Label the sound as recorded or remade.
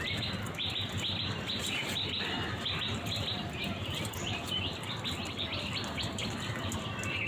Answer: recorded